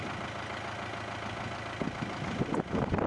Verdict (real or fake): real